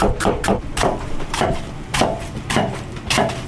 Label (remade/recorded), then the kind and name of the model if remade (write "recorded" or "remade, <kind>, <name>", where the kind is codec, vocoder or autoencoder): remade, vocoder, BigVGAN v2